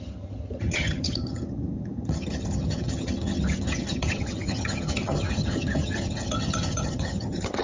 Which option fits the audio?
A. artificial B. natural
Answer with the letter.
A